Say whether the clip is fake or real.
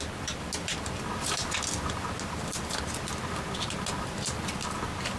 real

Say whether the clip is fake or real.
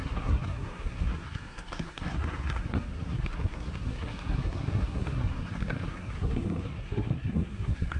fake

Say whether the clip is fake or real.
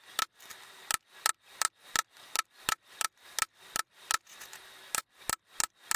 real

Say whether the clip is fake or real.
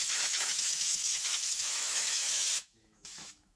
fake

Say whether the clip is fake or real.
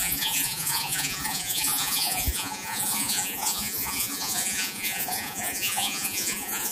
fake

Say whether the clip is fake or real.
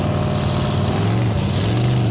real